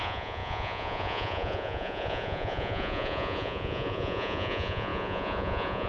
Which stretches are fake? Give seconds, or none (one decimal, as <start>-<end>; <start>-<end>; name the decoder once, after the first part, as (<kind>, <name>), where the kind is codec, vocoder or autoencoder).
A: 0.0-5.9 (vocoder, Vocos)